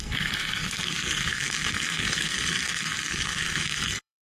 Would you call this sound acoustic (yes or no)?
no